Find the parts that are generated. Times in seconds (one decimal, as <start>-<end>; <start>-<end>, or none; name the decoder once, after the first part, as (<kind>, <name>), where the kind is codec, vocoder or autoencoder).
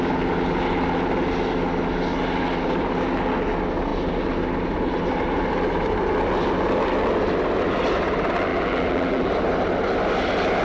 8.5-9.3 (vocoder, BigVGAN v2)